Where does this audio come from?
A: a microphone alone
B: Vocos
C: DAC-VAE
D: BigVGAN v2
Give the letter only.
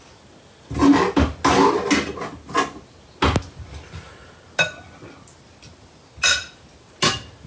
A